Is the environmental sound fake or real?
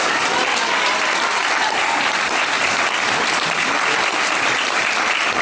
fake